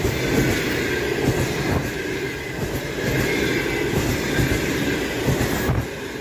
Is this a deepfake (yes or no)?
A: no